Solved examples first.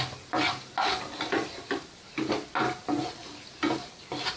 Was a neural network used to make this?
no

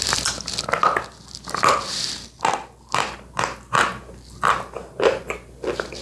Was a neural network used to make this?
no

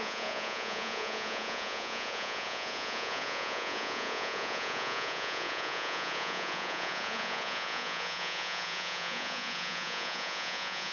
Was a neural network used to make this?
yes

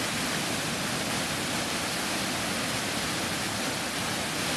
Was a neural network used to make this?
no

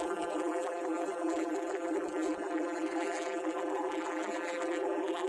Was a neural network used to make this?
yes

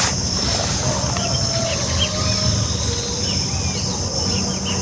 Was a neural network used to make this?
no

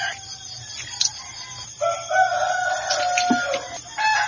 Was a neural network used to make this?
no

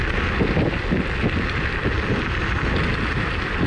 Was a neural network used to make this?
no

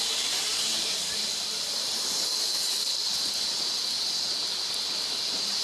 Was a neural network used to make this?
no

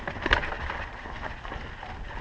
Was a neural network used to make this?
no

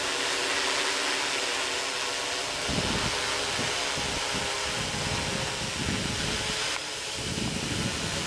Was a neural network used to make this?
no